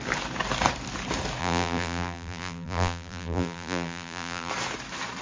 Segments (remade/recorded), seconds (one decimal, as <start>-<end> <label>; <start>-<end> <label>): 0.0-1.4 recorded; 1.4-4.5 remade; 4.5-5.2 recorded